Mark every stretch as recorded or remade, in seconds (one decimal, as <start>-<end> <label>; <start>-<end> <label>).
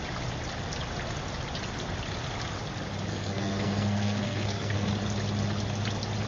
0.0-3.1 recorded; 3.1-4.9 remade; 4.9-6.3 recorded